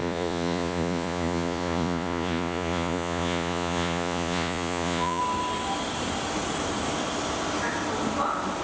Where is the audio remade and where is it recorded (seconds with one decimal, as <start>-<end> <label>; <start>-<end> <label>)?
0.0-5.2 remade; 5.2-8.6 recorded

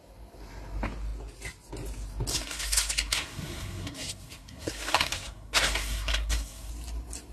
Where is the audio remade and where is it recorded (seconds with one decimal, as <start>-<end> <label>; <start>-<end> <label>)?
0.0-2.3 recorded; 2.3-6.7 remade; 6.7-7.3 recorded

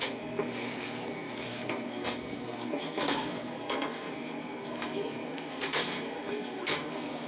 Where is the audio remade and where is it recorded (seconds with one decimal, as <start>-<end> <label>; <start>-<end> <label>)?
0.0-7.3 remade

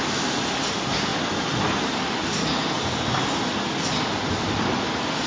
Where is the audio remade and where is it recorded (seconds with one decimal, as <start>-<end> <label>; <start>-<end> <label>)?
0.0-5.3 recorded

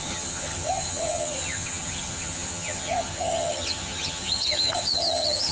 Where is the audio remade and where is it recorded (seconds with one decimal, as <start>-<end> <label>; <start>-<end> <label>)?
0.0-5.5 remade

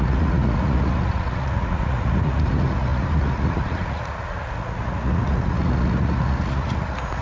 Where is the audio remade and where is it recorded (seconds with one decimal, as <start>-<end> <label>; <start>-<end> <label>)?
0.0-7.2 remade

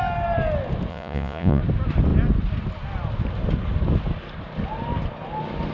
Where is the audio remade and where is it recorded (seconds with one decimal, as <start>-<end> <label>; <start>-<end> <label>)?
0.0-0.9 recorded; 0.9-1.6 remade; 1.6-5.7 recorded

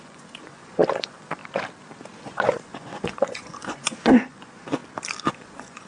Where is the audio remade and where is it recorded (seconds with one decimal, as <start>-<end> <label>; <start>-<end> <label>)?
0.0-1.4 remade; 1.4-2.2 recorded; 2.2-4.8 remade; 4.8-5.3 recorded; 5.3-5.9 remade